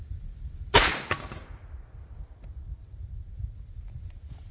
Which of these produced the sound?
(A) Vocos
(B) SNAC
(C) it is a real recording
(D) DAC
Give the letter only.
C